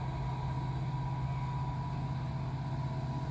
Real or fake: real